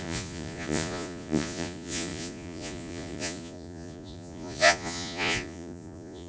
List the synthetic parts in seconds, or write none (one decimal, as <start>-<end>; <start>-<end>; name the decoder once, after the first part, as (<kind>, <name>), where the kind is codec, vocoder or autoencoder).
0.0-6.3 (vocoder, Vocos)